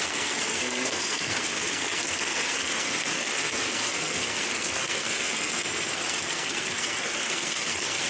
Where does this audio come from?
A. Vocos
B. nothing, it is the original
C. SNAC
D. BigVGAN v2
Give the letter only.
C